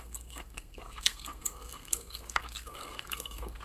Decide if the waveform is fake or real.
fake